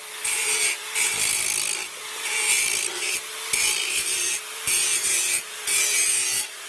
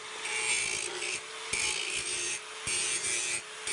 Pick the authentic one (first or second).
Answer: second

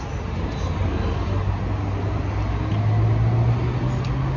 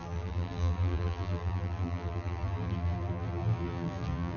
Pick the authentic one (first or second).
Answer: first